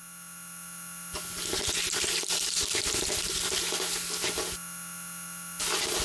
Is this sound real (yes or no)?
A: yes